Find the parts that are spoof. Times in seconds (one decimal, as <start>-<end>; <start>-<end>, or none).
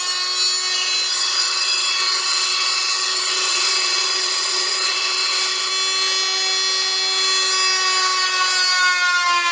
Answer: 1.1-5.7